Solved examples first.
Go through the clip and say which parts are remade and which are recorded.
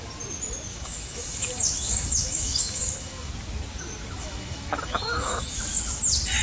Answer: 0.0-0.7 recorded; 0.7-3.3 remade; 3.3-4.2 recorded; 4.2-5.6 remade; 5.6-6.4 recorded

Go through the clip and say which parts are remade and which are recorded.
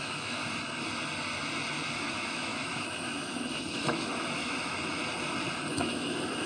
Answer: 0.0-0.4 remade; 0.4-1.9 recorded; 1.9-5.0 remade; 5.0-5.7 recorded; 5.7-6.5 remade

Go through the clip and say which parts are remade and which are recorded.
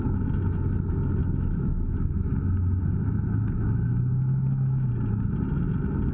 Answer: 0.0-1.2 recorded; 1.2-4.9 remade; 4.9-6.1 recorded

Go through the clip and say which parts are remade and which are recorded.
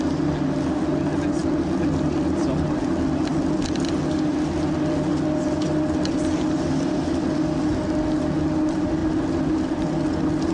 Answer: 0.0-10.5 recorded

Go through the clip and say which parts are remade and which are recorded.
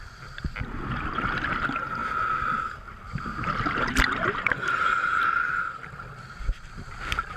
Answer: 0.0-7.4 recorded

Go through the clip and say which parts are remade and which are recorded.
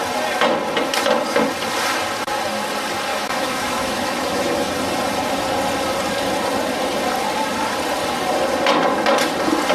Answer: 0.0-3.1 recorded; 3.1-4.7 remade; 4.7-9.7 recorded